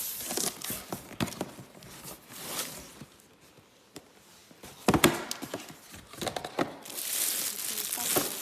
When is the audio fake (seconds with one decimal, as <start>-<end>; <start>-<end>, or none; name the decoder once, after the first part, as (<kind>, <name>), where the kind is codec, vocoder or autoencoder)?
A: none